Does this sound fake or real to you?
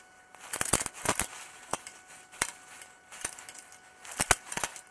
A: real